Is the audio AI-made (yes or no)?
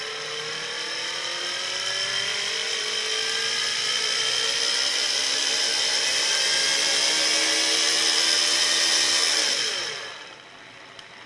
no